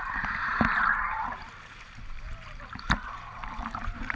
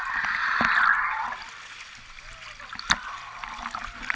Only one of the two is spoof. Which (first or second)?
first